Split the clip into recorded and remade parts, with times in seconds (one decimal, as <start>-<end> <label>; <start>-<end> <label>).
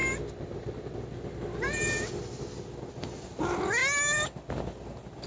0.0-5.3 recorded